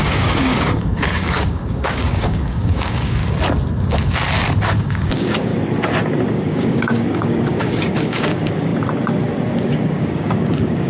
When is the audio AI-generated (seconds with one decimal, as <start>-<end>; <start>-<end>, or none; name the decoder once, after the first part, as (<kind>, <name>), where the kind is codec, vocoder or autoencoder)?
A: 0.0-3.2 (codec, DAC); 4.8-5.5; 6.3-8.7; 9.7-10.9